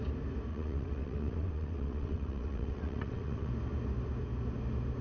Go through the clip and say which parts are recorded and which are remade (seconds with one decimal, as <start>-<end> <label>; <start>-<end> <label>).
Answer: 0.0-0.5 recorded; 0.5-3.5 remade; 3.5-5.0 recorded